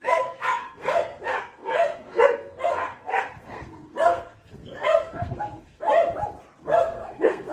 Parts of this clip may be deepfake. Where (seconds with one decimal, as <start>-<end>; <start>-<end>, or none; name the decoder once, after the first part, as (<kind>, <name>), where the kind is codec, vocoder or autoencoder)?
0.0-5.9 (codec, SNAC); 6.6-7.5